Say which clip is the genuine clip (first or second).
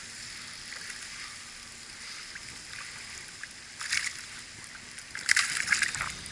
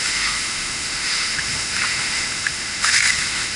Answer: first